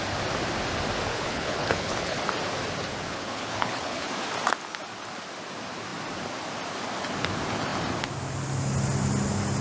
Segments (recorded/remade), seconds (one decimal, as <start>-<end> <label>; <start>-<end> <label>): 0.0-1.1 recorded; 1.1-2.2 remade; 2.2-3.0 recorded; 3.0-4.1 remade; 4.1-9.6 recorded